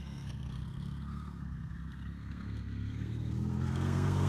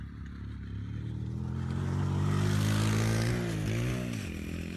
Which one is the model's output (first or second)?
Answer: first